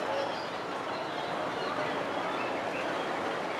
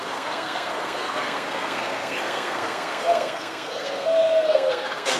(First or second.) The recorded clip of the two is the first